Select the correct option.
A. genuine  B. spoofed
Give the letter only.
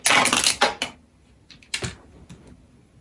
A